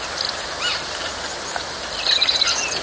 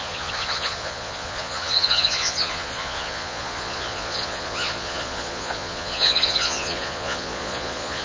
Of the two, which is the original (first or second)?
first